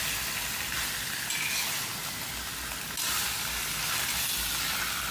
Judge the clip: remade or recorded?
recorded